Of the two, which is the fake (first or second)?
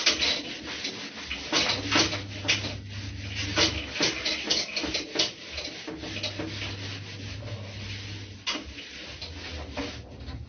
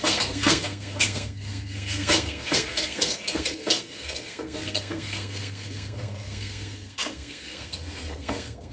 second